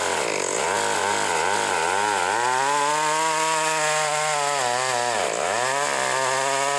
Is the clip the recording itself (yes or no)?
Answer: yes